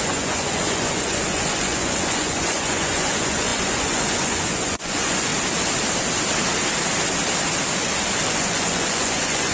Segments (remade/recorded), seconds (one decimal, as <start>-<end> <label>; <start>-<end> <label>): 0.0-5.3 remade; 5.3-8.3 recorded; 8.3-9.5 remade